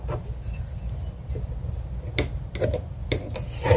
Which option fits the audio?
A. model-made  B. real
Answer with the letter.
B